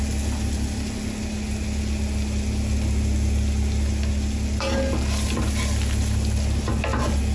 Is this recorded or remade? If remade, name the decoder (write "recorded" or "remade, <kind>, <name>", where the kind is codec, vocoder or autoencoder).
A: recorded